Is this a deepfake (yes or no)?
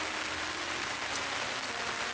no